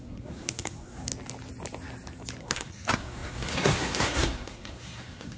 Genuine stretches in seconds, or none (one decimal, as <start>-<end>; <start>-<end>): 1.1-2.4